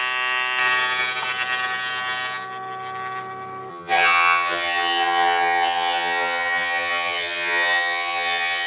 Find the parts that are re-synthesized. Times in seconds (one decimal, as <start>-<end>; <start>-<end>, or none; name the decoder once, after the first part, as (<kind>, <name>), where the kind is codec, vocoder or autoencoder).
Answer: 3.7-8.7 (vocoder, HiFi-GAN)